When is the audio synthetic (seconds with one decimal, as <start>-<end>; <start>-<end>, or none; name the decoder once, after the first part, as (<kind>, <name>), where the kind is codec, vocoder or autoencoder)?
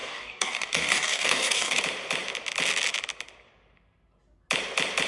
0.0-1.8 (codec, DAC)